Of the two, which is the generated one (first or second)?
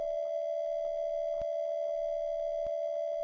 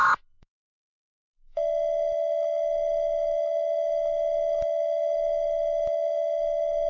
second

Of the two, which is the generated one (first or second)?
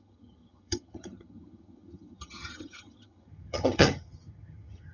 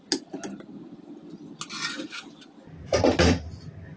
first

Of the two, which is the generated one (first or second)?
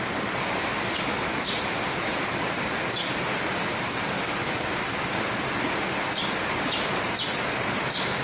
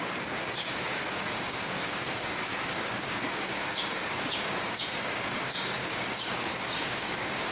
second